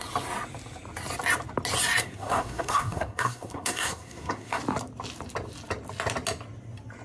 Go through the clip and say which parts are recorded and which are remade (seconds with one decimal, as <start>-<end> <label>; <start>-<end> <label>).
0.0-2.0 recorded; 2.0-4.6 remade; 4.6-7.0 recorded